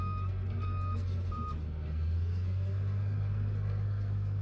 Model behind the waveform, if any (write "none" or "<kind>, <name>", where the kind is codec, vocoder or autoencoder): codec, SNAC